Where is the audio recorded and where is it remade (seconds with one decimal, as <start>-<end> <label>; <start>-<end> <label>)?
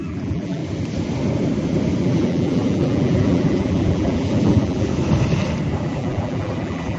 0.0-0.6 remade; 0.6-2.0 recorded; 2.0-4.9 remade; 4.9-5.8 recorded; 5.8-7.0 remade